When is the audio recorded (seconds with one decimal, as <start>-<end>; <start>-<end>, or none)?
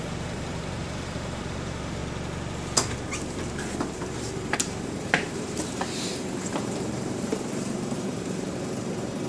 2.0-3.8